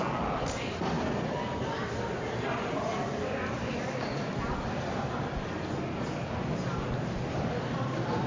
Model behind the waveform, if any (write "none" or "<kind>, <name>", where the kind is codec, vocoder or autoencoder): none